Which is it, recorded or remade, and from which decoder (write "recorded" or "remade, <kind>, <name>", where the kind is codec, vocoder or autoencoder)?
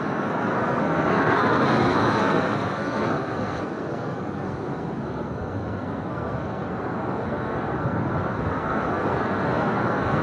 remade, codec, SNAC